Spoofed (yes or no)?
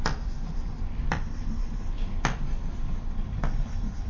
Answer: yes